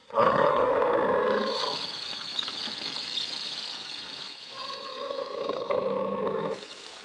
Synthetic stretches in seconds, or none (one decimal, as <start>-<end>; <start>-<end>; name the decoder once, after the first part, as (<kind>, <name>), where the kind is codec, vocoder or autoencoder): 0.0-0.7 (codec, SNAC)